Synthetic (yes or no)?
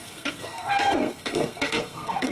yes